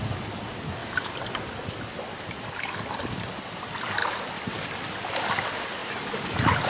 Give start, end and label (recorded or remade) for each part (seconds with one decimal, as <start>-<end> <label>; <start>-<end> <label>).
0.0-6.7 remade